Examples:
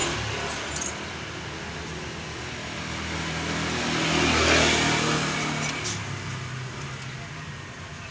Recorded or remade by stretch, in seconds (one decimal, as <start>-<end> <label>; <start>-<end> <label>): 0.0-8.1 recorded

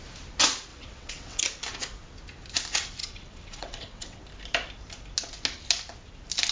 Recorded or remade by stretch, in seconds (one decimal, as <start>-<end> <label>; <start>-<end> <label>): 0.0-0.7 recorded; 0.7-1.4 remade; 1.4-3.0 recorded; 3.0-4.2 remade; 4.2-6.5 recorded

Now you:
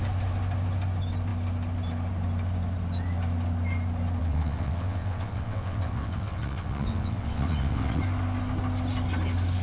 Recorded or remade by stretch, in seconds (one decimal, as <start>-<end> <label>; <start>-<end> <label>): 0.0-4.2 recorded; 4.2-8.0 remade; 8.0-9.6 recorded